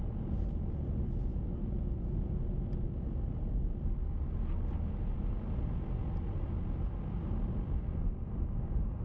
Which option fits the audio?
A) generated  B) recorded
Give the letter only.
B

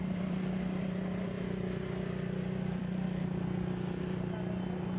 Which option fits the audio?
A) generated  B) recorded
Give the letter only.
A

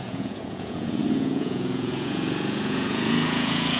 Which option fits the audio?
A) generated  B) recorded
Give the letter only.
A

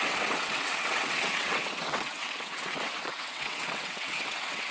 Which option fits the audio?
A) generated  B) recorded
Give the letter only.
A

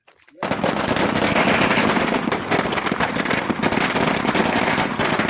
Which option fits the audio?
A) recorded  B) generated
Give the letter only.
A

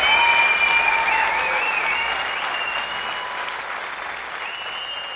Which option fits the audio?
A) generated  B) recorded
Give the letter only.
B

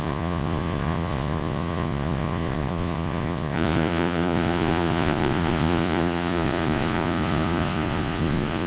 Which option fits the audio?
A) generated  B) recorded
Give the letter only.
A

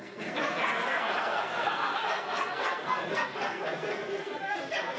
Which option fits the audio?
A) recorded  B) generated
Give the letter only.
B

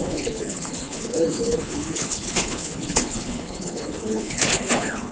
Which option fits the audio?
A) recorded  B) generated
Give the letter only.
B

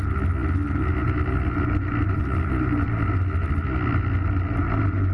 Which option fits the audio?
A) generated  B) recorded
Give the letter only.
B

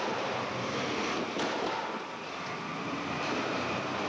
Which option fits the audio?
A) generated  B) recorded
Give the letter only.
B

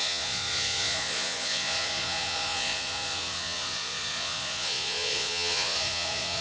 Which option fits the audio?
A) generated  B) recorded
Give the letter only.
A